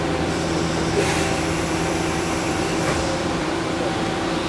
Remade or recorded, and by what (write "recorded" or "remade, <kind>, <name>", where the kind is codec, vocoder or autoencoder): remade, vocoder, BigVGAN v2